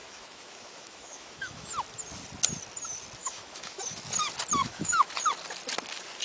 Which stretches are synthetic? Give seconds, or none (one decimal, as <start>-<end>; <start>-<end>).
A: 0.0-1.7; 3.2-3.8; 4.6-5.1